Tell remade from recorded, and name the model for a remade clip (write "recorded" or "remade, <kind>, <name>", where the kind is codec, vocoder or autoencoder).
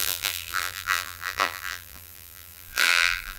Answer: remade, vocoder, BigVGAN v2